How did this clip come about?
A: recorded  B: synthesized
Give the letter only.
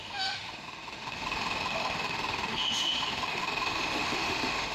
B